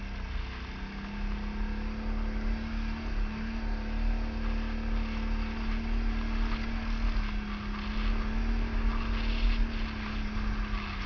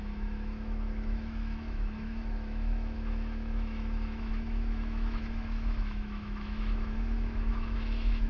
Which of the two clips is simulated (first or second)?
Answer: second